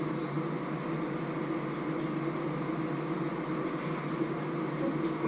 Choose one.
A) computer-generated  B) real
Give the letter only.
B